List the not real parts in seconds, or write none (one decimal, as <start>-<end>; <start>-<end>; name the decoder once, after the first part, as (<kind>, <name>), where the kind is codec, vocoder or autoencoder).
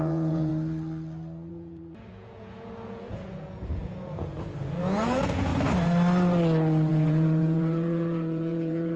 0.0-0.5 (vocoder, Vocos); 1.5-5.5; 6.9-9.0